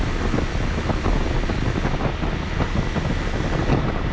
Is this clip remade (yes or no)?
no